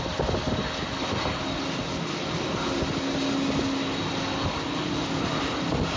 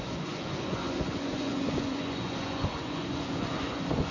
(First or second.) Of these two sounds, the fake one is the second